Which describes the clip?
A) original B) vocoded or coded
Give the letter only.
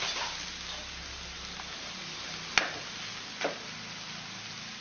A